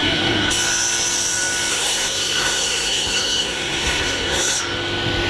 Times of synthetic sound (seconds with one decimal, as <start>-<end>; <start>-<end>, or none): 0.0-0.5; 1.7-4.6